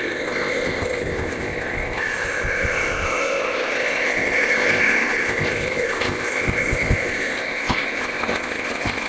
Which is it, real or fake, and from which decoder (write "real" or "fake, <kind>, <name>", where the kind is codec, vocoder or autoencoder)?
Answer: fake, codec, ZipCodec